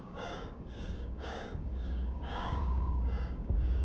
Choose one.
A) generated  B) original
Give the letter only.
A